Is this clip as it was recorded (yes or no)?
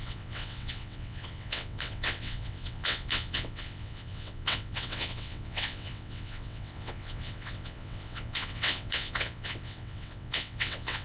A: no